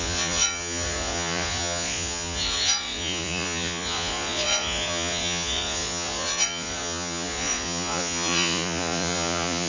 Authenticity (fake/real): fake